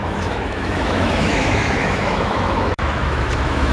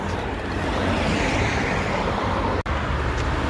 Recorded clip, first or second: second